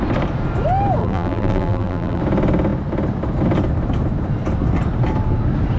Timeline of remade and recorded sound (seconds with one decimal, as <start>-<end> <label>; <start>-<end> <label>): 0.0-1.0 recorded; 1.0-2.2 remade; 2.2-5.8 recorded